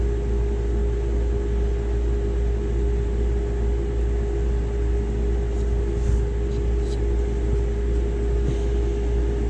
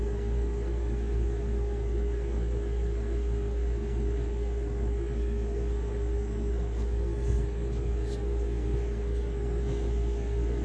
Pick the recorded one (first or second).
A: first